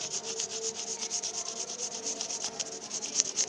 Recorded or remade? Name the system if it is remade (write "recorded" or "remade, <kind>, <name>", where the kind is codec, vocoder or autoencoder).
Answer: recorded